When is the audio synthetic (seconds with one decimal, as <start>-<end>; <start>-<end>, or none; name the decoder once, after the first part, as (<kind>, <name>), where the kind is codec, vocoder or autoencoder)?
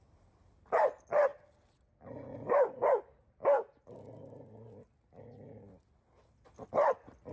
none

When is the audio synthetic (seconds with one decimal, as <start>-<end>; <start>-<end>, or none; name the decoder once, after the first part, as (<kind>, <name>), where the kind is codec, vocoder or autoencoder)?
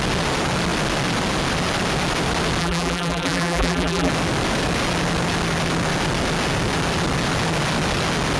2.6-4.1 (vocoder, BigVGAN v2)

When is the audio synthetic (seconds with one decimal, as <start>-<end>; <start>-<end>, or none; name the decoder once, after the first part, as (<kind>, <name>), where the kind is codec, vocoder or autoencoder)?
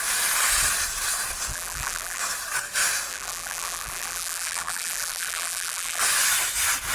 1.5-2.2 (vocoder, BigVGAN v2); 3.1-6.0